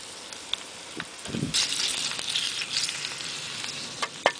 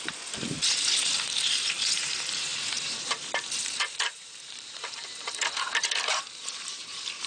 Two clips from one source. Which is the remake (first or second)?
second